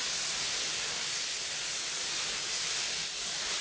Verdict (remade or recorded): recorded